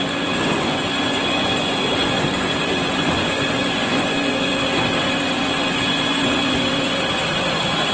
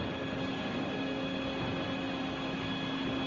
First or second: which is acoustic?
second